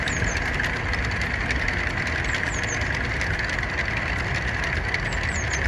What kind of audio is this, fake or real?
real